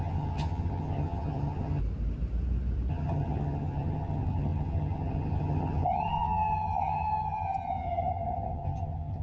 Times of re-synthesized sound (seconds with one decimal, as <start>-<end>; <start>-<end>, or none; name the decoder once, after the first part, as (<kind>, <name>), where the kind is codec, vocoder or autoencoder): 0.0-1.8 (vocoder, HiFi-GAN); 2.9-9.2